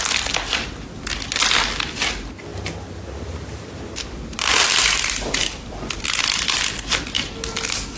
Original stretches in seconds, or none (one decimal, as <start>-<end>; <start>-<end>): 0.0-2.5; 6.0-8.0